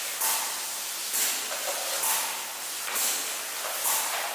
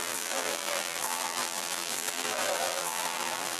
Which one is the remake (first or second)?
second